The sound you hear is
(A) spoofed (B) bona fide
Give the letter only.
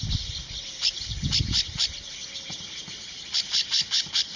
B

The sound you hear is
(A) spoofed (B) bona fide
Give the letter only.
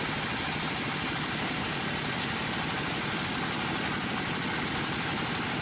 B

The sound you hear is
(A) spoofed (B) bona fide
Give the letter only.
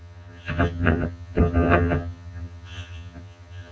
A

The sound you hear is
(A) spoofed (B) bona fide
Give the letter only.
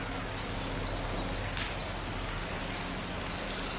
B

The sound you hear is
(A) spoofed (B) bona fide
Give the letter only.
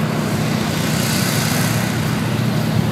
B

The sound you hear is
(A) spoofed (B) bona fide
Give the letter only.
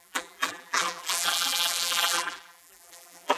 A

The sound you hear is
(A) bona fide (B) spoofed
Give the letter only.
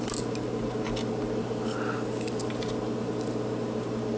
A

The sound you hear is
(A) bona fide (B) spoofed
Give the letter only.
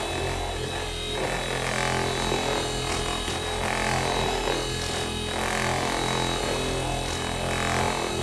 A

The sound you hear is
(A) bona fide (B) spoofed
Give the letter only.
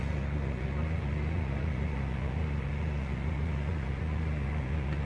B